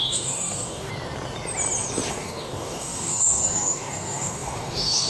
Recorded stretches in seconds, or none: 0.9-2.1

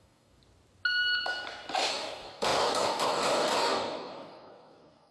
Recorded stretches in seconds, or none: 0.4-1.9

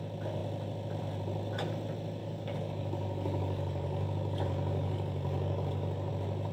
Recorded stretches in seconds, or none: 0.0-2.2; 6.1-6.5

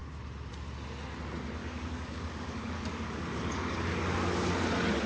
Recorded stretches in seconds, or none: 0.0-1.6; 4.5-5.1

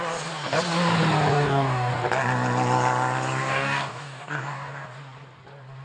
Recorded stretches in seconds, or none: 0.0-1.3; 1.9-3.4; 4.7-5.8

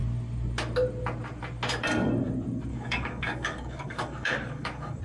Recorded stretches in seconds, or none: 0.0-2.7